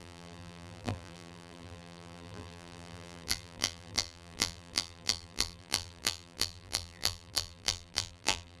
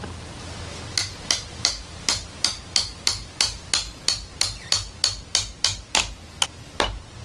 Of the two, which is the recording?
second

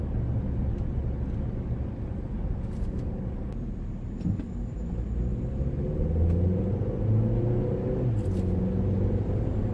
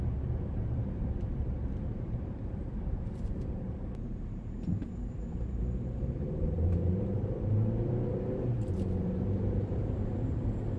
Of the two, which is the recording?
first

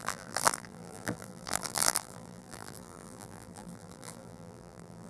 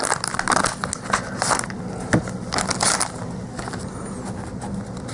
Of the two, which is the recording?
second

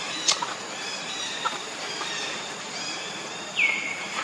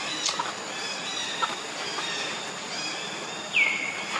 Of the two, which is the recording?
second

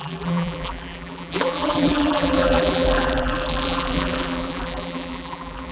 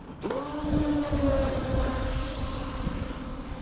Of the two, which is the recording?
second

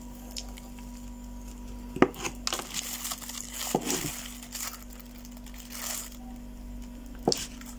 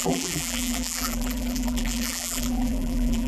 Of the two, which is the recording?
first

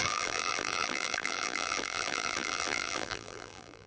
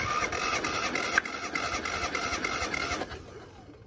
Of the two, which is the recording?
second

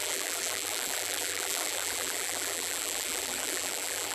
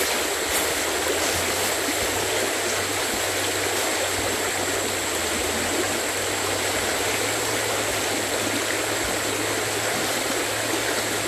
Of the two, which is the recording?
second